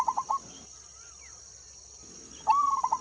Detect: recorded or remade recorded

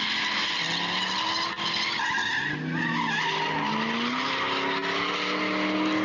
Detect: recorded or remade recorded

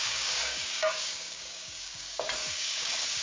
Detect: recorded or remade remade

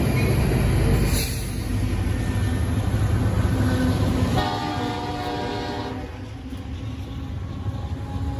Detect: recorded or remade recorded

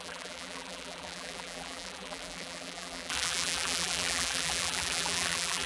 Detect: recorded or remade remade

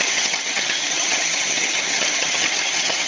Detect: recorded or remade remade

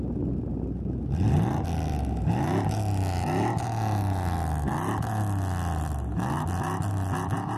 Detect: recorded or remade recorded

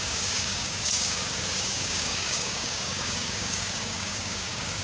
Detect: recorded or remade remade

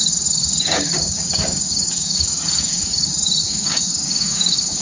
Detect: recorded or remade remade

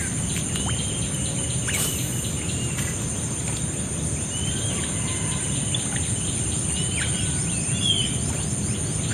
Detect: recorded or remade recorded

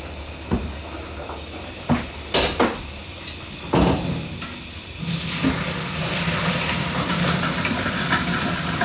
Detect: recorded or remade recorded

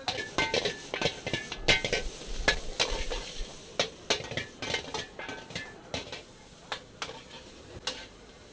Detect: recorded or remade recorded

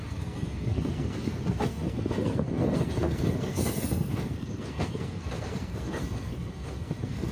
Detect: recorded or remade remade